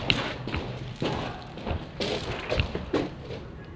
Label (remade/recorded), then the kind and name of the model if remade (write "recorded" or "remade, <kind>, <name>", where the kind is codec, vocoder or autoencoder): recorded